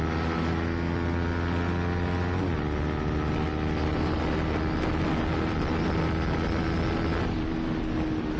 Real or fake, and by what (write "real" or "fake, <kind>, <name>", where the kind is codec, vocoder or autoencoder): real